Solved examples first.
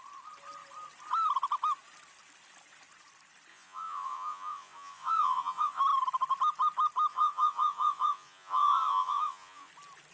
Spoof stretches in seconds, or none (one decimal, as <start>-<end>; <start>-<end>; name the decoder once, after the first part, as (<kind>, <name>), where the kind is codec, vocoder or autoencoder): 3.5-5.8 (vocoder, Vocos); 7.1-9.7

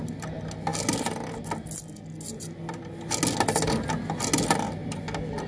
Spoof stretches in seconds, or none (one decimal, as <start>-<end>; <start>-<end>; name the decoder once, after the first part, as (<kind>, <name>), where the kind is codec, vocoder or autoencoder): none

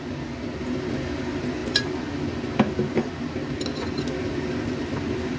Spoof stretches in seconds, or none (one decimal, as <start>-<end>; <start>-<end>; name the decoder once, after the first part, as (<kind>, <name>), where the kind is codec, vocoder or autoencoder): none

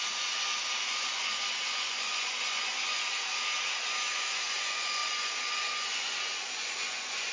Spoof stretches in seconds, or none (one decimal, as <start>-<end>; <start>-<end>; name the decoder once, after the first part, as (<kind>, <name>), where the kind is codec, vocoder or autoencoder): 0.0-0.5 (vocoder, Vocos); 1.0-3.3; 3.9-7.3

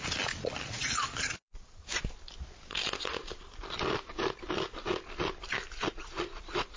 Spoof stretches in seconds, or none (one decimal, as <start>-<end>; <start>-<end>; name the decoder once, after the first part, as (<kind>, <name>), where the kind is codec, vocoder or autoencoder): 0.0-1.8 (vocoder, Vocos); 5.9-6.8

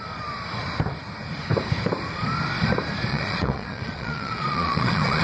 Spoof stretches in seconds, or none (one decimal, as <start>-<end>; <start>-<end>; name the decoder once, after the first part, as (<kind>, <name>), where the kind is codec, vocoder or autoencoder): 3.1-5.2 (vocoder, Vocos)

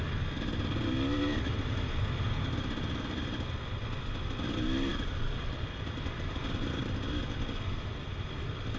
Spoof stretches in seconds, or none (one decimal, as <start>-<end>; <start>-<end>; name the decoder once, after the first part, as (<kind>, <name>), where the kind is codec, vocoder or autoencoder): none

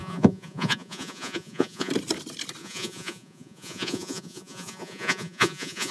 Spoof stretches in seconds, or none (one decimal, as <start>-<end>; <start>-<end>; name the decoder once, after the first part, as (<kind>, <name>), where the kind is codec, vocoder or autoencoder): 0.0-1.9 (vocoder, Vocos); 2.6-5.9